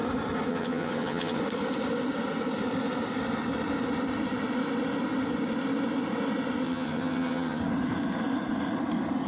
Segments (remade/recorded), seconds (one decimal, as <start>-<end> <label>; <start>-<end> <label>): 0.0-0.5 recorded; 0.5-1.4 remade; 1.4-6.6 recorded; 6.6-7.6 remade; 7.6-9.3 recorded